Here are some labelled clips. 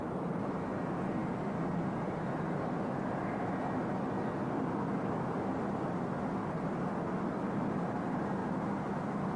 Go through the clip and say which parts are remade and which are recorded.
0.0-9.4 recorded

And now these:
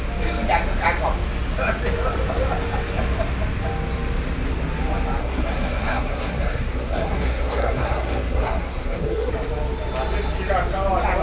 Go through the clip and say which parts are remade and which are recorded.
0.0-5.2 recorded; 5.2-9.3 remade; 9.3-11.2 recorded

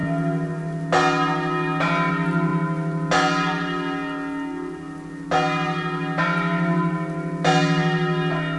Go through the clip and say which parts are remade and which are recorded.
0.0-8.6 recorded

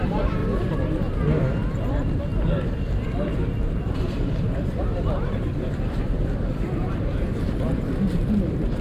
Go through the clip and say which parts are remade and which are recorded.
0.0-0.4 remade; 0.4-1.9 recorded; 1.9-8.8 remade

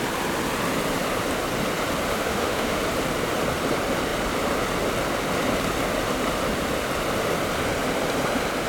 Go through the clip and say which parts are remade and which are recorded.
0.0-2.1 recorded; 2.1-2.8 remade; 2.8-8.7 recorded